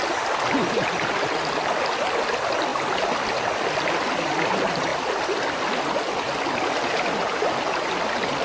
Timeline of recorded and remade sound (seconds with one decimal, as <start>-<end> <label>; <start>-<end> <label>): 0.0-8.4 recorded

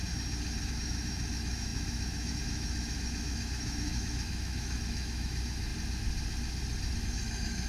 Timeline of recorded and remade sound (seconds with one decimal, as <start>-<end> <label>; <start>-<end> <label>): 0.0-0.6 recorded; 0.6-5.7 remade; 5.7-7.0 recorded; 7.0-7.7 remade

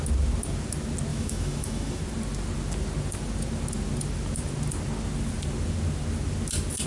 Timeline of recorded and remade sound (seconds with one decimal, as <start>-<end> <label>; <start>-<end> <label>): 0.0-1.1 recorded; 1.1-2.0 remade; 2.0-6.9 recorded

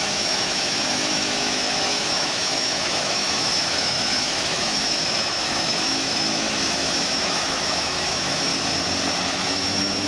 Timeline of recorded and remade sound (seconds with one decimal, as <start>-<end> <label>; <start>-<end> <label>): 0.0-8.5 remade; 8.5-9.3 recorded; 9.3-10.1 remade

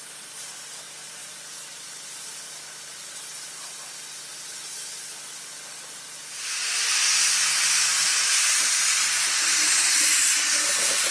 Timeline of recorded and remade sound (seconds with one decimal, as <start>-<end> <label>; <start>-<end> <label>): 0.0-11.1 recorded

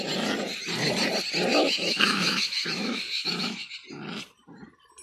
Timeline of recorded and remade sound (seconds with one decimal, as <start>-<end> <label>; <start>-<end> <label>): 0.0-1.5 recorded; 1.5-3.7 remade; 3.7-5.0 recorded